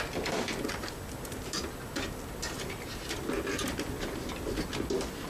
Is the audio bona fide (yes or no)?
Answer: yes